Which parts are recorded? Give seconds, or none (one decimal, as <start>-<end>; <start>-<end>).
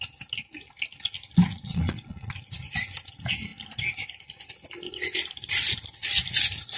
0.0-1.5; 2.3-6.8